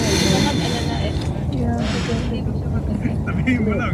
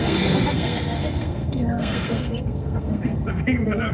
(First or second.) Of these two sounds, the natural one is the first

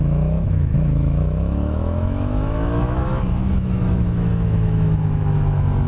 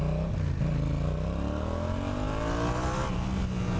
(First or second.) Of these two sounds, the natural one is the second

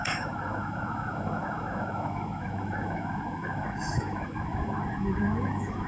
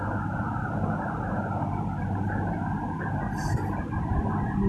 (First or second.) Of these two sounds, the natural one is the second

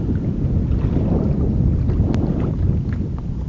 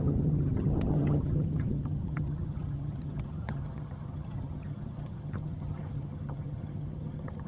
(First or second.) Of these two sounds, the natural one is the first